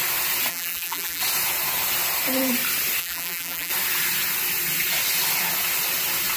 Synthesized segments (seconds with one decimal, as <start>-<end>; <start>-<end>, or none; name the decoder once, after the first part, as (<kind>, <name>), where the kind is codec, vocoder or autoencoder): 0.5-1.2 (vocoder, BigVGAN v2); 3.0-3.7